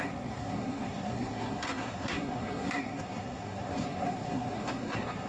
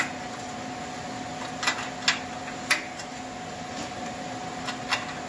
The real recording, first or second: second